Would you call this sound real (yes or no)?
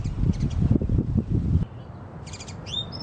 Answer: yes